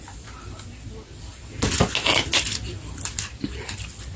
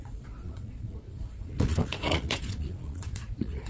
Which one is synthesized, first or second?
second